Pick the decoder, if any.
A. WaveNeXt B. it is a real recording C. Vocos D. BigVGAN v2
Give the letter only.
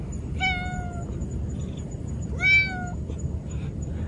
B